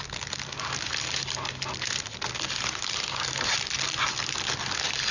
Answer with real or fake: real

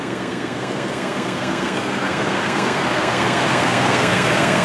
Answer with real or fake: fake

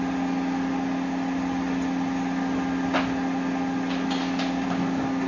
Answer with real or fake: real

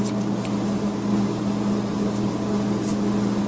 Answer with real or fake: real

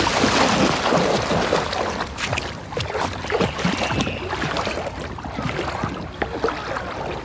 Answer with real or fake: real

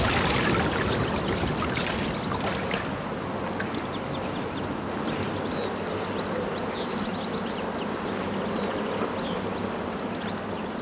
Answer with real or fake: real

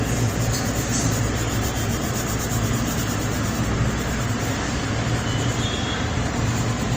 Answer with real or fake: real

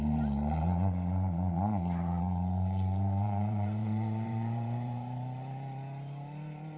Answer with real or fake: fake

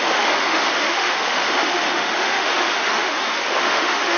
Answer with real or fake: fake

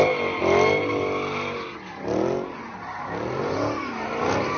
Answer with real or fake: real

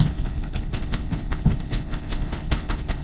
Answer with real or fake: fake